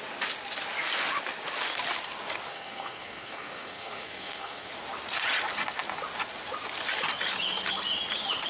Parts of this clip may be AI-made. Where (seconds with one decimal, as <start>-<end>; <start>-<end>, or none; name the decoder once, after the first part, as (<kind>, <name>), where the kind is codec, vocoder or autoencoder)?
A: 2.5-4.7 (codec, SNAC)